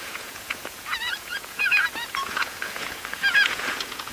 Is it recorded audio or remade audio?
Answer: remade